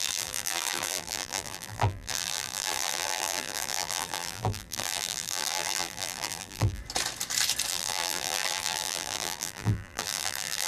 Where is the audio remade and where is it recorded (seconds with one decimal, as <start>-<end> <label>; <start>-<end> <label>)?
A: 0.0-6.8 remade; 6.8-7.7 recorded; 7.7-10.7 remade